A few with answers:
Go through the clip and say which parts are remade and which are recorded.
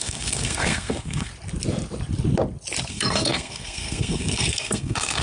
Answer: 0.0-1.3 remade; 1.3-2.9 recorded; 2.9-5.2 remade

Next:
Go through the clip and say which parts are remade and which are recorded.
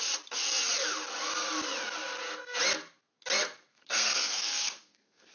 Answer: 0.0-3.7 recorded; 3.7-5.3 remade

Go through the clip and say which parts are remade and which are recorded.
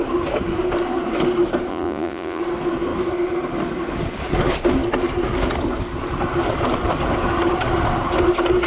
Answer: 0.0-1.7 recorded; 1.7-2.4 remade; 2.4-8.7 recorded